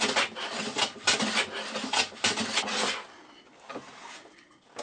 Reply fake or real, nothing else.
real